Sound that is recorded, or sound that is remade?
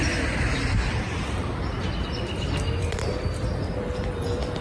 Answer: recorded